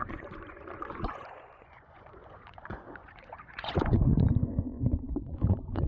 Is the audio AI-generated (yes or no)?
yes